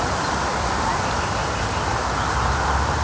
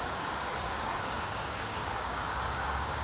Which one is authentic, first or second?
first